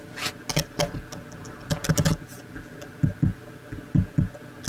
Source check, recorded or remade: recorded